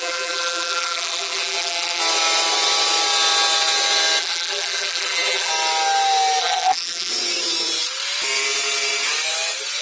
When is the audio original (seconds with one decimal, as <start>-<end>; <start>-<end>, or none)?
2.0-4.2; 5.5-6.4; 7.1-9.8